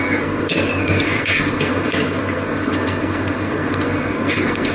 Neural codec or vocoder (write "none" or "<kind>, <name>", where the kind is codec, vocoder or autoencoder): codec, SNAC